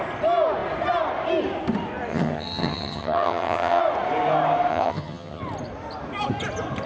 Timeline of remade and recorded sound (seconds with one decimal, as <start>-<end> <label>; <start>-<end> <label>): 0.0-2.1 recorded; 2.1-3.8 remade; 3.8-4.7 recorded; 4.7-5.4 remade; 5.4-6.9 recorded